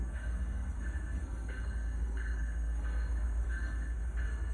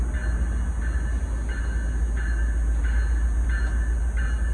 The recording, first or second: second